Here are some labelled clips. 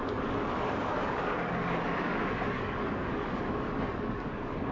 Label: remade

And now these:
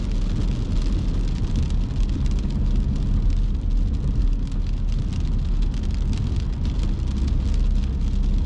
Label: recorded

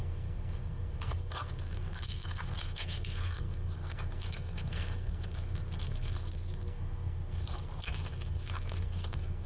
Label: remade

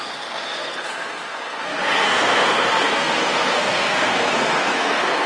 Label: remade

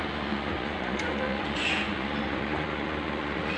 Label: remade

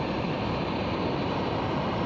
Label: recorded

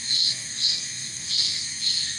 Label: remade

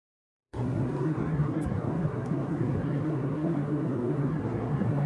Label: remade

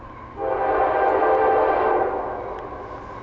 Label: recorded